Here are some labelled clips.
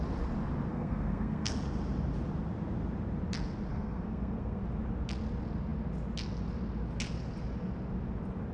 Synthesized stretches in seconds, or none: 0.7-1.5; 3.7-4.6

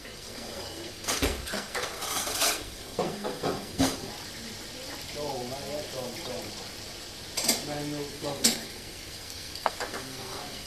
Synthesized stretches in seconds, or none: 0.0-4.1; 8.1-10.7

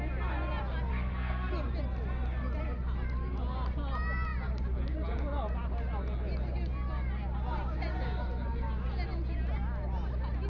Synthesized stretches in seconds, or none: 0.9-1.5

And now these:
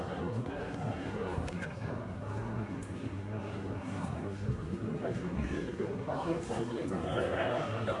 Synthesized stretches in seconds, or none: 0.0-8.0

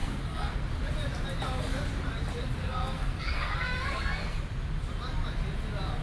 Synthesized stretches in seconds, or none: 0.0-0.7; 2.6-4.4